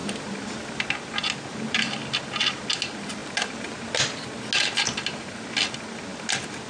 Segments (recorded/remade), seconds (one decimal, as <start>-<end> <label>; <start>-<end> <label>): 0.0-6.7 recorded